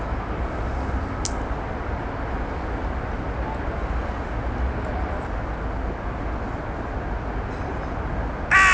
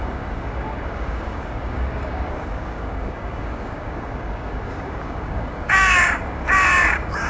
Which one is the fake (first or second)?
second